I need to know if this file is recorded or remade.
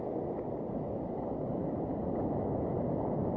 recorded